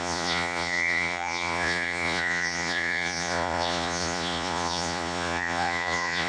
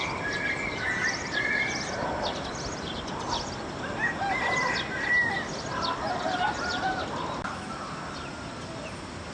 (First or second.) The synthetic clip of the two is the first